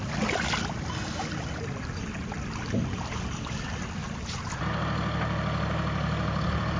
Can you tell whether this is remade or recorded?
recorded